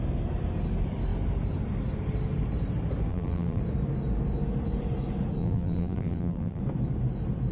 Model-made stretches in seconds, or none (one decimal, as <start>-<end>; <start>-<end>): 3.1-3.6; 5.4-6.6